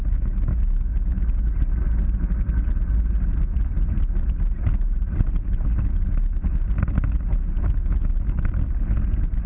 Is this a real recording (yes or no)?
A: yes